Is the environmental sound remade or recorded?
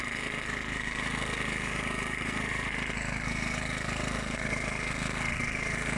remade